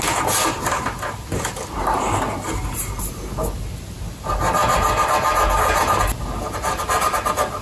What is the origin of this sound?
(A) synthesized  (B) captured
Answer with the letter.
B